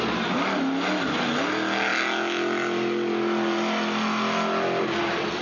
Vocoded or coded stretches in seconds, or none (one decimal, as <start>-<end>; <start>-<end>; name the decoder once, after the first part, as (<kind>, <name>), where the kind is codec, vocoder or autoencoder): none